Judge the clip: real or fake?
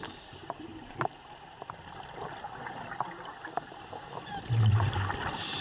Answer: real